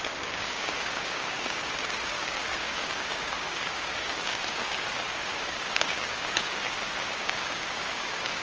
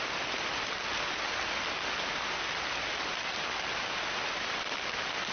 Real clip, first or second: second